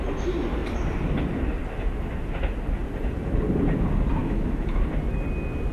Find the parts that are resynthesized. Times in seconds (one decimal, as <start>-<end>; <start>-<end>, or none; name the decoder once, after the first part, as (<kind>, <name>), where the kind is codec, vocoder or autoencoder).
4.2-4.8 (autoencoder, DAC-VAE)